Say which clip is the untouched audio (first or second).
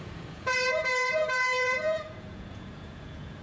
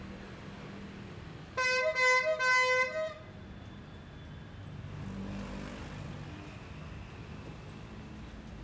second